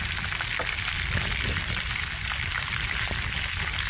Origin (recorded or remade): recorded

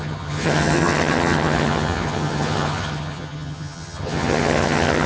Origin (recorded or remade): remade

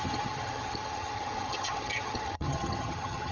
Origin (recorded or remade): remade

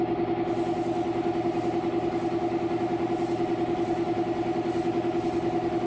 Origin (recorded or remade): recorded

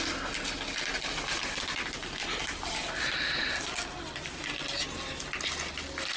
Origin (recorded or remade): recorded